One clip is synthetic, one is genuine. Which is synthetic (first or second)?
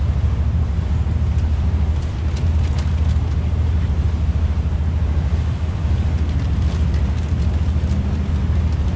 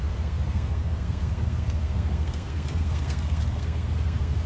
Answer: second